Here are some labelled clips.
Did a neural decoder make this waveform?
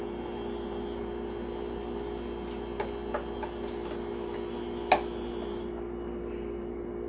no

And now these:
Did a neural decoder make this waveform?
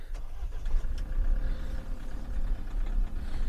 no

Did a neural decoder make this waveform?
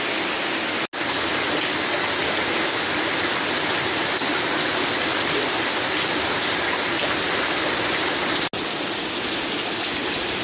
no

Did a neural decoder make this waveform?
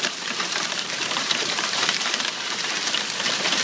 yes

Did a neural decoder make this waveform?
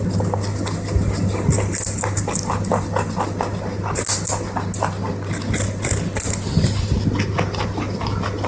no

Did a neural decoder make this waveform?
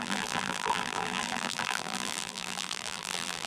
yes